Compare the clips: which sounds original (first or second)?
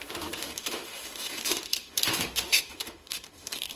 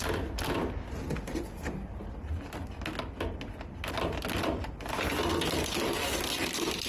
second